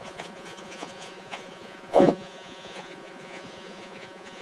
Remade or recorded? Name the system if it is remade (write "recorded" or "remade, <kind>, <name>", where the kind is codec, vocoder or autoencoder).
remade, vocoder, Vocos